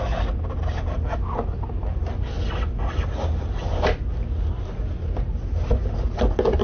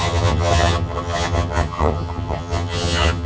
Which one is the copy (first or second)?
second